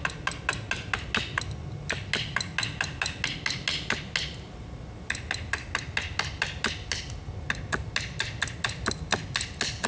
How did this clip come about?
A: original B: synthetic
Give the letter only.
A